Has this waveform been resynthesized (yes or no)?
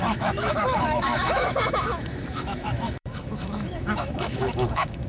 yes